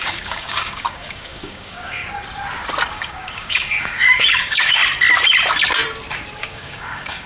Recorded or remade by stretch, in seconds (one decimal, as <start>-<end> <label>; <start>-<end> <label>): 0.0-2.0 remade; 2.0-2.9 recorded; 2.9-4.8 remade; 4.8-6.4 recorded; 6.4-7.3 remade